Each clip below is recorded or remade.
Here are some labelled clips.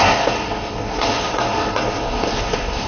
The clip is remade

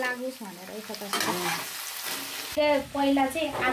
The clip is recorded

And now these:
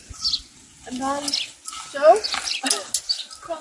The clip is recorded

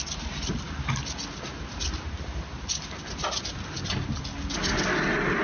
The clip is recorded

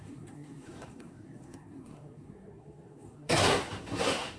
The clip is remade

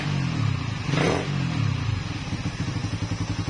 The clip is recorded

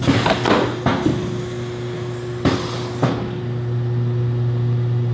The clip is recorded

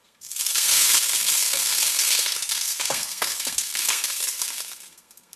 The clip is remade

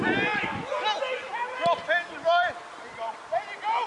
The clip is recorded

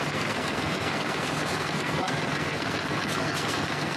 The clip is remade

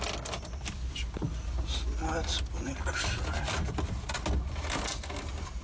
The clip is recorded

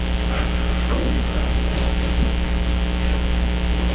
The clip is recorded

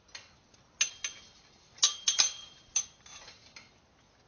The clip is recorded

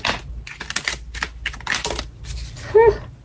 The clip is recorded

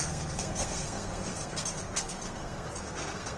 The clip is remade